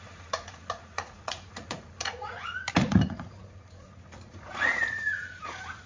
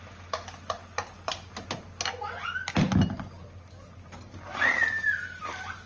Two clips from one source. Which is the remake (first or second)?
first